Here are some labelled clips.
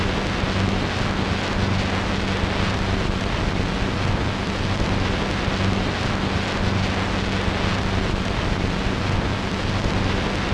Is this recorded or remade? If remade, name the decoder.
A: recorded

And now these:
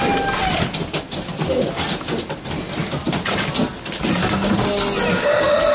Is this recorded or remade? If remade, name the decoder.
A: recorded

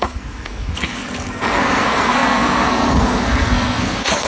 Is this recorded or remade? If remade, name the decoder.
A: remade, codec, SNAC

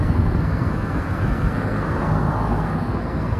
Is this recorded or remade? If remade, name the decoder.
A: remade, codec, SNAC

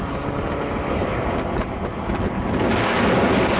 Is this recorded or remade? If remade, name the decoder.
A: recorded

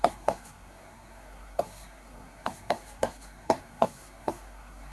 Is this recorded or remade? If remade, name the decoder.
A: remade, codec, SNAC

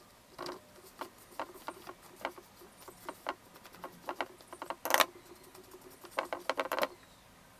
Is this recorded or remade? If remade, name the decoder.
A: recorded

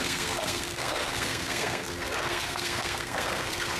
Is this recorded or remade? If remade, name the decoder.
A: remade, codec, SNAC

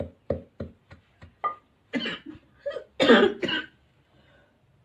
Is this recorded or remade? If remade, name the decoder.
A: recorded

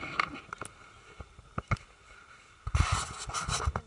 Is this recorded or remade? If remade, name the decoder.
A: recorded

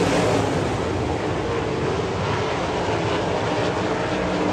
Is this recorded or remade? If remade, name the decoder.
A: recorded